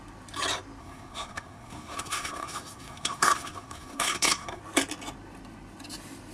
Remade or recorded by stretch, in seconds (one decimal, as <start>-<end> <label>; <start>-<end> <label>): 0.0-0.8 recorded; 0.8-4.6 remade; 4.6-6.3 recorded